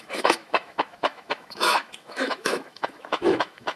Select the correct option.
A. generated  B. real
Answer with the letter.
A